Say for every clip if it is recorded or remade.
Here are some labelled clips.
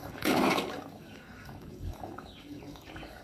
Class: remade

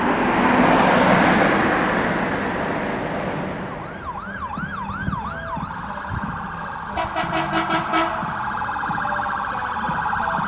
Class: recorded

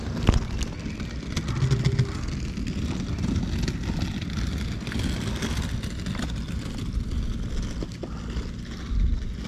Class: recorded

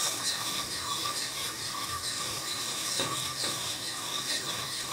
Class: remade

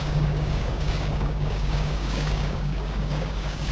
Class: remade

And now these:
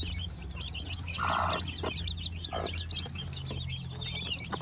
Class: recorded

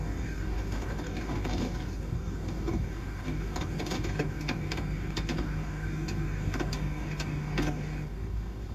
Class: remade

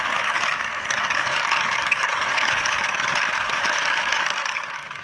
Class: remade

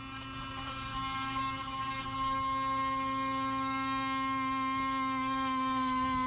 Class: recorded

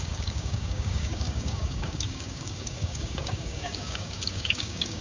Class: remade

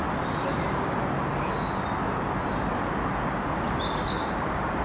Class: recorded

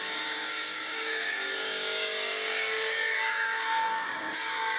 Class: remade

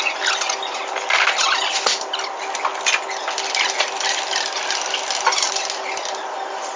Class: recorded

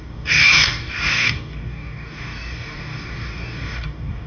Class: remade